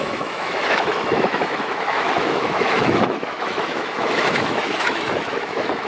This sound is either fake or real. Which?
fake